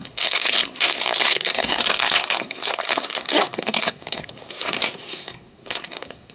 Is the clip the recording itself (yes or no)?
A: no